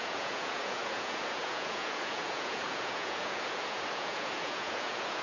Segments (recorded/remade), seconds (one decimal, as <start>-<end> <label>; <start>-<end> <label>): 0.0-5.2 remade